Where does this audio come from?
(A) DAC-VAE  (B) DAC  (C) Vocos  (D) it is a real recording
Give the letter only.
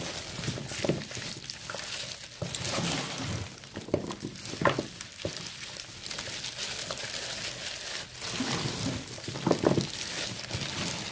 D